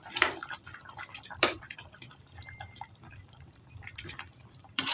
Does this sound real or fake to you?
fake